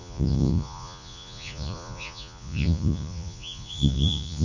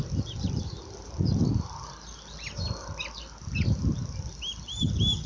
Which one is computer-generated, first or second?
first